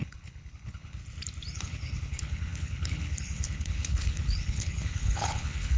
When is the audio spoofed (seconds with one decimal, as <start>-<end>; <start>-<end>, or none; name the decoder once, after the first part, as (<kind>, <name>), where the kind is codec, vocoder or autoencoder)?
0.0-1.0 (codec, HILCodec); 1.6-5.8